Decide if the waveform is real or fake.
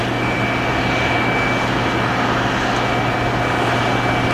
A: real